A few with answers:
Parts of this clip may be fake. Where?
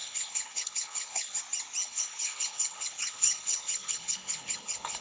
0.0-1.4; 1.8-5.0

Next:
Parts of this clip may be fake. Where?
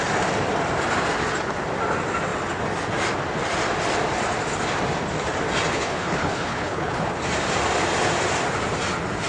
5.7-7.1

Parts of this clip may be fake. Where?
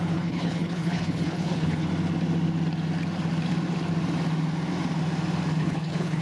0.0-1.9; 5.6-6.2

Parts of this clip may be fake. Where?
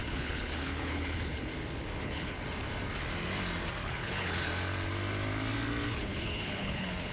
0.0-1.5; 2.0-2.4; 3.8-4.5; 5.9-7.1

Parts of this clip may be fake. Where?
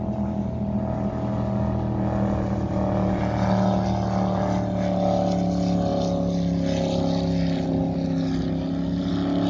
none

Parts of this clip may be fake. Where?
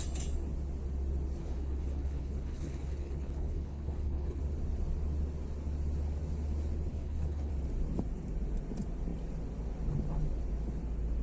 1.4-4.4; 6.9-7.5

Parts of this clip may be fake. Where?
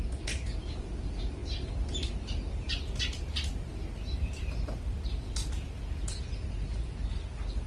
none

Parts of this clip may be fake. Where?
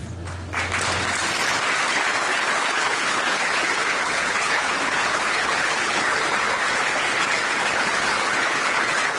1.9-9.2